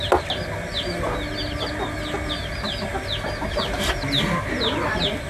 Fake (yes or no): no